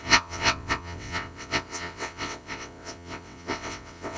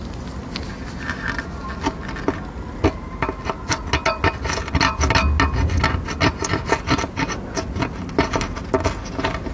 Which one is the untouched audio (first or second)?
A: second